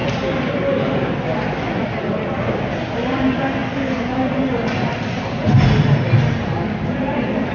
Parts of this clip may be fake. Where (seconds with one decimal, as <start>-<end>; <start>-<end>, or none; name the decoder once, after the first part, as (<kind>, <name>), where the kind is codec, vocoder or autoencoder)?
none